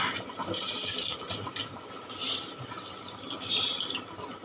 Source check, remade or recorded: recorded